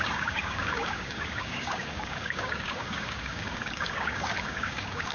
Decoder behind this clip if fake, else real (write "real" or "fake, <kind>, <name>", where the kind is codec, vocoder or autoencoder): fake, codec, DAC